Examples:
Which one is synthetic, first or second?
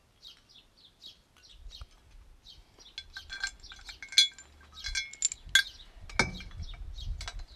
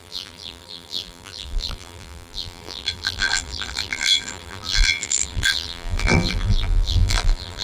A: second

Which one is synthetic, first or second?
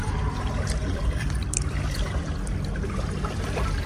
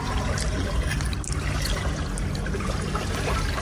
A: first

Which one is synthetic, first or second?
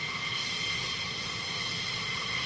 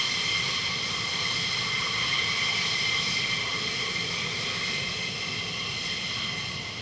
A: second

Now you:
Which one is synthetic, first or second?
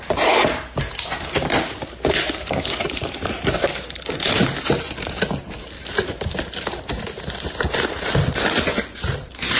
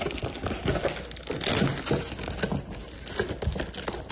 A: first